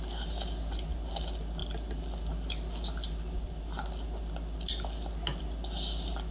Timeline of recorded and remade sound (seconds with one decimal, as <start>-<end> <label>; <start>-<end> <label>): 0.0-6.3 recorded